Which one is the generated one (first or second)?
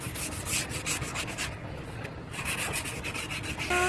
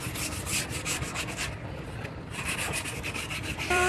second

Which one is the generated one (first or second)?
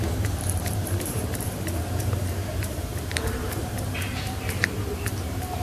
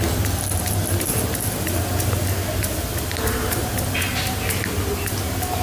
first